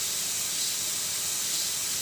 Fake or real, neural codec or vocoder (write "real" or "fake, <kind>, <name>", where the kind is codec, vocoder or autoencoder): real